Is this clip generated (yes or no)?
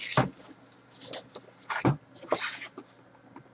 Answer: no